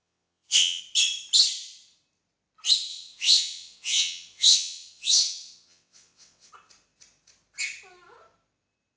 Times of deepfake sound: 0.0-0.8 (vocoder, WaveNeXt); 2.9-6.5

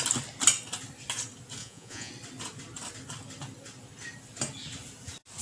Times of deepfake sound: 1.6-2.1 (vocoder, Vocos)

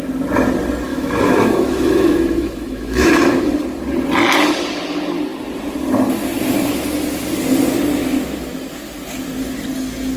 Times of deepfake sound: 0.9-3.5 (autoencoder, DAC-VAE)